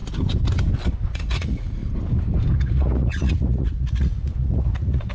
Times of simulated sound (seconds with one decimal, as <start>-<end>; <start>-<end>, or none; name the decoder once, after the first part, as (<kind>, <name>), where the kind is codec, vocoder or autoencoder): 1.1-1.8 (vocoder, Vocos); 2.6-5.1